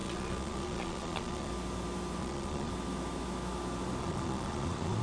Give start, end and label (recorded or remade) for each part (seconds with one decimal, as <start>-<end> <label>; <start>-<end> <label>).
0.0-1.5 remade; 1.5-2.2 recorded; 2.2-2.7 remade; 2.7-4.0 recorded; 4.0-5.0 remade